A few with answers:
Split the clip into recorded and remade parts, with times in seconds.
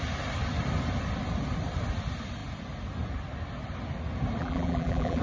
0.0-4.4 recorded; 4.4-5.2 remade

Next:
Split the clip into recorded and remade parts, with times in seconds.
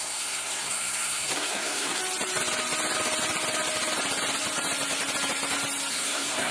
0.0-2.0 remade; 2.0-5.9 recorded; 5.9-6.5 remade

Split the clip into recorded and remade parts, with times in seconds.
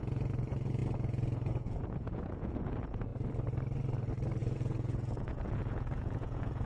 0.0-3.1 remade; 3.1-4.4 recorded; 4.4-6.7 remade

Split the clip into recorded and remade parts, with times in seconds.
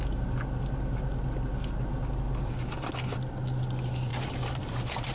0.0-4.1 recorded; 4.1-5.1 remade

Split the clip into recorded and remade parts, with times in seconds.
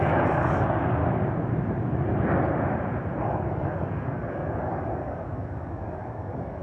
0.0-1.0 remade; 1.0-3.2 recorded; 3.2-6.6 remade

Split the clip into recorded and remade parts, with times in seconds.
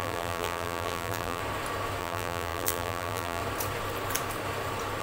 0.0-1.4 remade; 1.4-2.0 recorded; 2.0-3.4 remade; 3.4-5.0 recorded